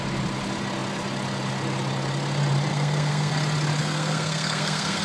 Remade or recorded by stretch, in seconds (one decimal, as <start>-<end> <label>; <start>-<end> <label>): 0.0-2.7 recorded; 2.7-3.3 remade; 3.3-3.8 recorded; 3.8-5.0 remade